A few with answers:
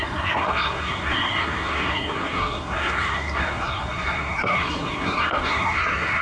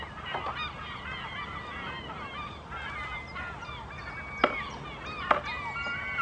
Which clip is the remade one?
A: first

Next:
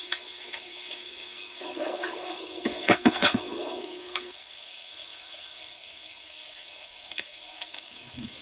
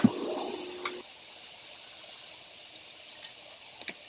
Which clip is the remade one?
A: first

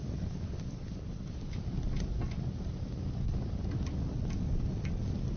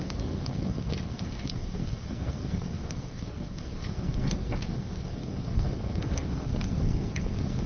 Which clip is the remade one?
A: second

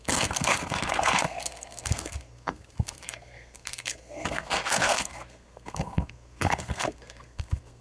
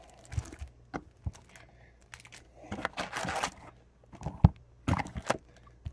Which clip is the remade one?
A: first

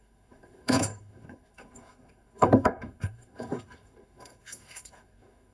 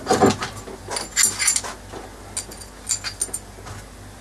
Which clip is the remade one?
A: first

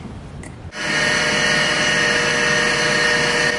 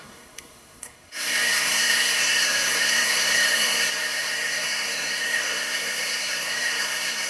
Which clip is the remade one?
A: second